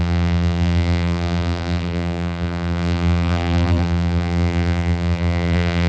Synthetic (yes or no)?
yes